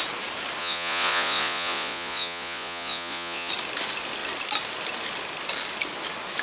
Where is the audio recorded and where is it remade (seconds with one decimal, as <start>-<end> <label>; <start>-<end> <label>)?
0.0-0.6 recorded; 0.6-3.5 remade; 3.5-6.4 recorded